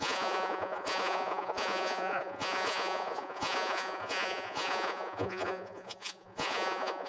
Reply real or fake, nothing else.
fake